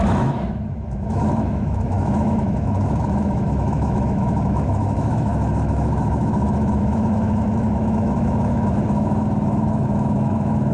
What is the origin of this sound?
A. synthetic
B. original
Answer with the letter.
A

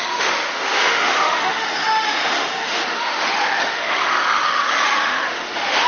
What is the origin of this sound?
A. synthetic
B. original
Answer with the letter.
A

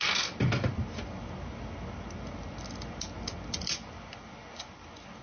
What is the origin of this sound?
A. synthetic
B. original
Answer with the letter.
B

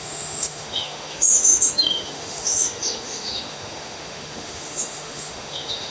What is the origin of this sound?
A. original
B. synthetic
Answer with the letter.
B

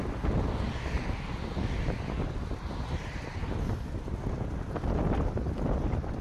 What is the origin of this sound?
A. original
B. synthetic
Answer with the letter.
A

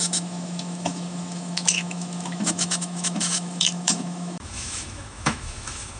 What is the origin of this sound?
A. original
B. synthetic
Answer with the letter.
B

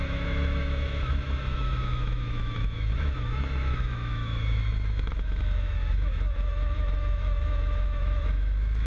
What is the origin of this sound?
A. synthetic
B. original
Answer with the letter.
A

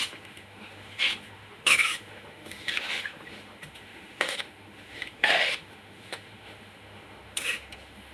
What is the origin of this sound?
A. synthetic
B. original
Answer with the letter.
A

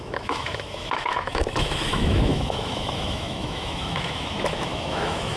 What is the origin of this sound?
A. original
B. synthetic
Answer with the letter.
B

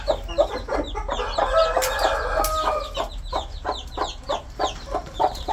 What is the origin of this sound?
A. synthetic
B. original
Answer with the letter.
B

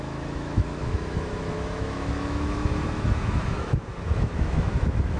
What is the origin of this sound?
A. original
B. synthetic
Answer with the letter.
B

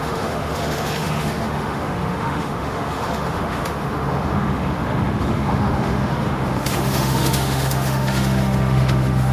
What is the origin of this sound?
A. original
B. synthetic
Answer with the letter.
B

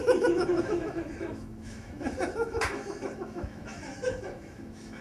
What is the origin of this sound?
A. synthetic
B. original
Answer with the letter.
A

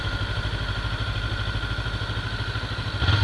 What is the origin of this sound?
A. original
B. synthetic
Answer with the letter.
A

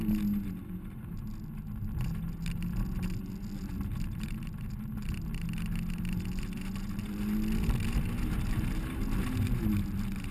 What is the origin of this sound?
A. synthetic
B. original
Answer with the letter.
B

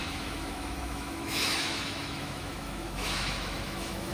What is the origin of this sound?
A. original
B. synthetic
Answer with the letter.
B